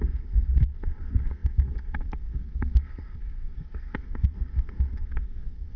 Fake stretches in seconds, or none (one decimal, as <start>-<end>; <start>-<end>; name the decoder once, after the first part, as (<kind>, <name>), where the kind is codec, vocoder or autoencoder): 0.0-5.8 (codec, SNAC)